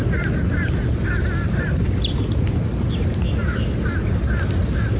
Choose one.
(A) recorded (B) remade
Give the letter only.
A